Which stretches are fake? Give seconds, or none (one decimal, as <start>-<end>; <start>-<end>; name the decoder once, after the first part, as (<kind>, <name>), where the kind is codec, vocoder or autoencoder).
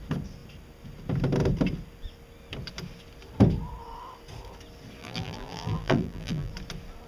5.0-6.5 (vocoder, BigVGAN v2)